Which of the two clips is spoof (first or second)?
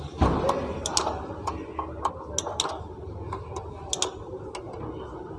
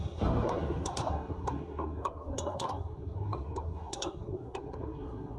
second